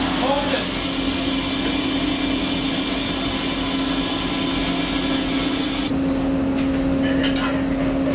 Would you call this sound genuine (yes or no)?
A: yes